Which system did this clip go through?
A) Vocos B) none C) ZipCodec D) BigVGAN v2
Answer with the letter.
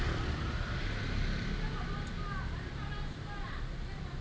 B